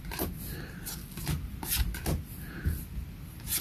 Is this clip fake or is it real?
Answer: real